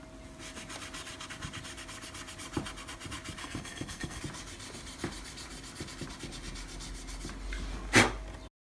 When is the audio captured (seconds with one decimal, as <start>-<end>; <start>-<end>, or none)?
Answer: 0.0-3.4; 4.2-8.6